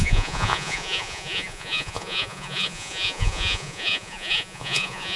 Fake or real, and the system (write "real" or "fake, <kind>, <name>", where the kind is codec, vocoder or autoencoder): fake, vocoder, Vocos